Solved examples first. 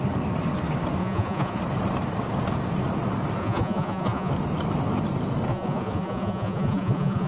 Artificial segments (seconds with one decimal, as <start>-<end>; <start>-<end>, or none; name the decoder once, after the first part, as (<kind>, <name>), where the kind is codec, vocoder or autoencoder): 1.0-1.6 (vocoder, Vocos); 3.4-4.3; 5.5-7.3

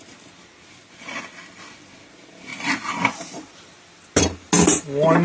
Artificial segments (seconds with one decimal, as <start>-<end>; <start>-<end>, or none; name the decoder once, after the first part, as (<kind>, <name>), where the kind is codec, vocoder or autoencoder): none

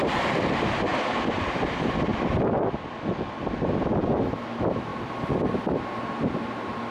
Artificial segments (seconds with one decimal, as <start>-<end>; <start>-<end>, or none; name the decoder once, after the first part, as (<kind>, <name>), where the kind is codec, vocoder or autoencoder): 0.9-1.6 (vocoder, BigVGAN v2); 4.9-5.6

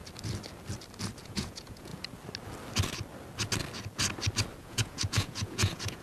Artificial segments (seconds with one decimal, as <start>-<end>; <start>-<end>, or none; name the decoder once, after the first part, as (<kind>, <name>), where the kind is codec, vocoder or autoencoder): 1.2-1.9 (vocoder, Vocos); 4.6-6.0

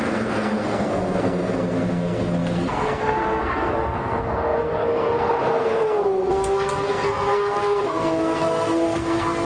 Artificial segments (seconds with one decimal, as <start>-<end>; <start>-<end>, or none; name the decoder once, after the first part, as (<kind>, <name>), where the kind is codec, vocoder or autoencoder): 0.0-9.4 (codec, SNAC)